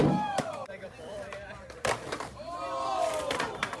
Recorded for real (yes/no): no